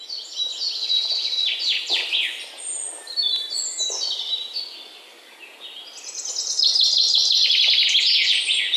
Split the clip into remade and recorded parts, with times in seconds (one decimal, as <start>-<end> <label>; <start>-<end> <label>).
0.0-8.8 recorded